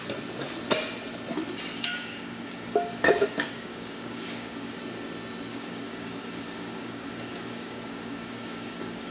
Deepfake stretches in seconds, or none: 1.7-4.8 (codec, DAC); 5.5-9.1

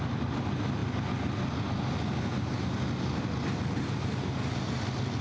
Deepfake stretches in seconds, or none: none

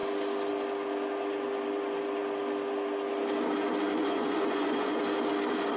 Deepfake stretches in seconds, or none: 4.0-5.0 (vocoder, Vocos)

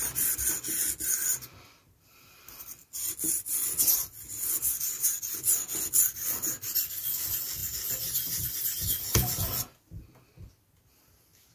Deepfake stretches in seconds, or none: none

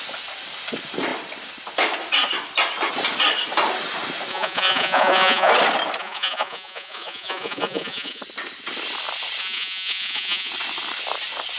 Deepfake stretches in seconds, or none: 4.3-5.5 (vocoder, Vocos); 6.0-8.2; 9.4-10.5

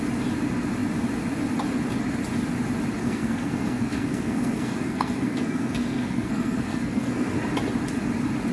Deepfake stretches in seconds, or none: 3.0-7.4 (codec, SNAC)

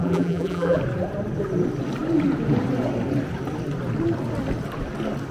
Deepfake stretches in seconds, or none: 0.0-0.8 (vocoder, BigVGAN v2)

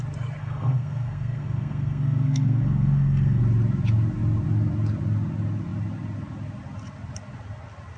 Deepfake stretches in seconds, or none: 0.4-3.4 (codec, SNAC)